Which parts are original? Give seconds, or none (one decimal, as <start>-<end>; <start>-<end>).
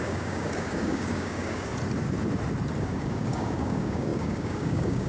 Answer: 1.7-2.8